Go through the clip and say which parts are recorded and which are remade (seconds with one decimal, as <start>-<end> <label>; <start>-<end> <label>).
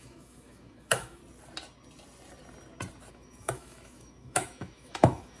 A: 0.0-1.2 remade; 1.2-3.1 recorded; 3.1-5.4 remade